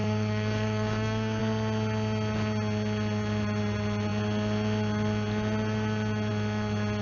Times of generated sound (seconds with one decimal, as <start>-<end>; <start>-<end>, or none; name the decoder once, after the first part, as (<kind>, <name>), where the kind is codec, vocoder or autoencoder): 0.0-1.4 (codec, DAC)